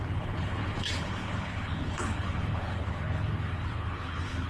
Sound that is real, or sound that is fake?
fake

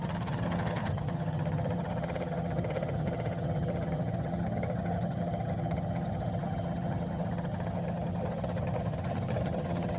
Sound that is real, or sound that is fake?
fake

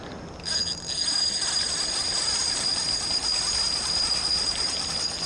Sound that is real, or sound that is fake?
real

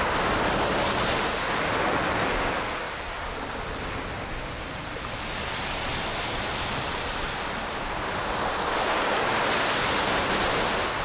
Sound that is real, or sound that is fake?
real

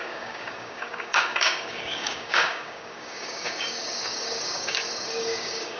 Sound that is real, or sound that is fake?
fake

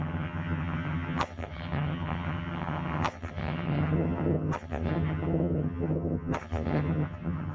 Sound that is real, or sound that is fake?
fake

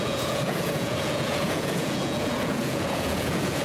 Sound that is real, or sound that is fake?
fake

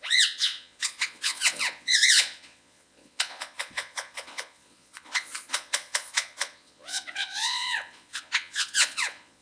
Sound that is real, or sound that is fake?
fake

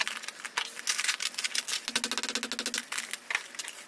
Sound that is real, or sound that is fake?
real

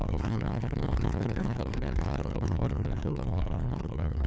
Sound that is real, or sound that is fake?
fake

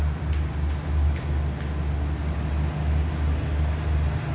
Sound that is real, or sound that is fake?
real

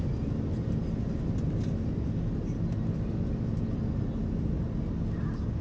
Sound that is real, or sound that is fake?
real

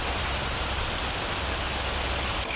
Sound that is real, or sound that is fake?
real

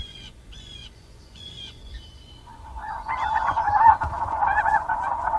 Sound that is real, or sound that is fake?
fake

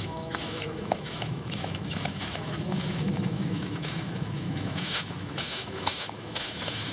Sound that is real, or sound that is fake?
fake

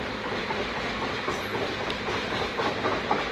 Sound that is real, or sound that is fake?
real